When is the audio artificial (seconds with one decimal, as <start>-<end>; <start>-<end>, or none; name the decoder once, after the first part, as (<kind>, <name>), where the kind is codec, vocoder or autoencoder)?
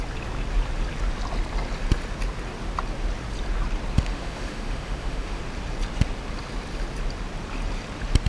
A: 4.1-5.4 (autoencoder, DAC-VAE)